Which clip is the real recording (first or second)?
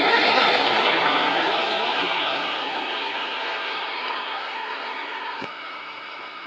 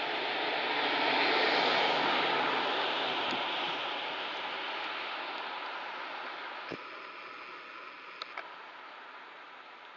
second